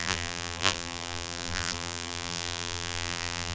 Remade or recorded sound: remade